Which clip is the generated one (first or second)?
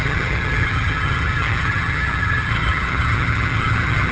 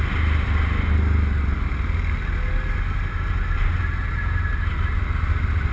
first